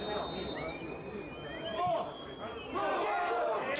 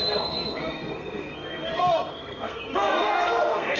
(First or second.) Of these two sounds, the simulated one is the second